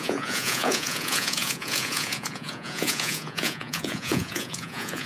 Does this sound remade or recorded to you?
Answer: remade